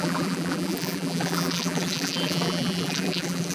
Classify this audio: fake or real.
fake